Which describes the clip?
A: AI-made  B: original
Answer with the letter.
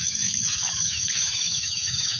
A